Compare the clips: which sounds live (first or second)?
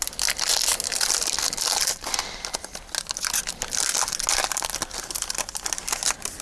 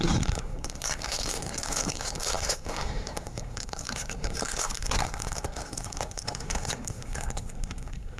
first